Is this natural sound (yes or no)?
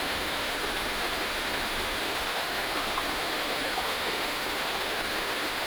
no